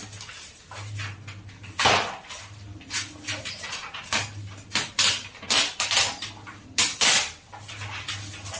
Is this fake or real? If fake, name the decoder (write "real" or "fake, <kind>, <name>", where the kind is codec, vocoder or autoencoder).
real